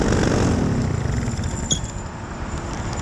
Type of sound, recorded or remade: recorded